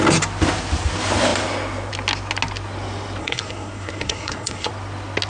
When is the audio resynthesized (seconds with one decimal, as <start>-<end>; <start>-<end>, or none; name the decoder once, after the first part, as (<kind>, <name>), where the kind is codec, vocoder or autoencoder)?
3.2-4.7 (codec, SNAC)